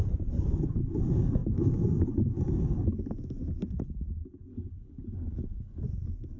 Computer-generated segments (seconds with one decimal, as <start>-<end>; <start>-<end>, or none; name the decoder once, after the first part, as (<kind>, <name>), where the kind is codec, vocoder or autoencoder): 4.5-5.8 (codec, HILCodec)